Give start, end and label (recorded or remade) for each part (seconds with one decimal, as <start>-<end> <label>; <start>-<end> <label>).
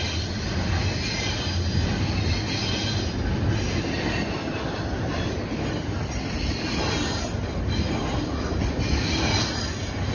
0.0-10.1 recorded